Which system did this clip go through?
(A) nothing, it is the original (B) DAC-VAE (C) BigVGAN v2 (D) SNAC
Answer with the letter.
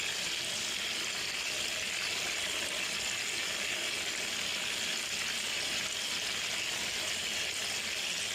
A